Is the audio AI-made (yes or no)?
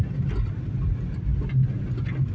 no